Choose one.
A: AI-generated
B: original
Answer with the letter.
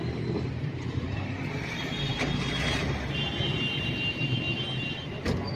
A